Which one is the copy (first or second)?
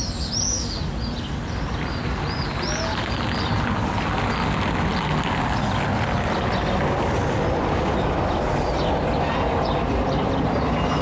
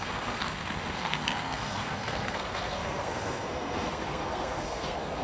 second